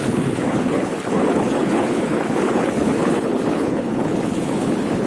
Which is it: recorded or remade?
remade